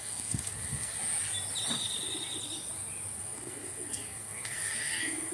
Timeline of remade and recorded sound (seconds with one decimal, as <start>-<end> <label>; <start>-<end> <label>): 0.0-0.9 remade; 0.9-3.2 recorded; 3.2-5.3 remade